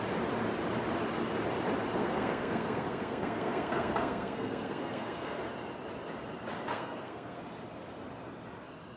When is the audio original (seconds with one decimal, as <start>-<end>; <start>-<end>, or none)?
0.0-2.0; 5.4-6.7; 7.4-9.0